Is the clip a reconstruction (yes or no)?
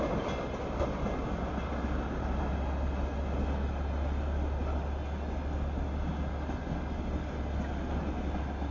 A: no